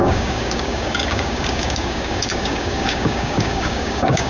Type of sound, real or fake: fake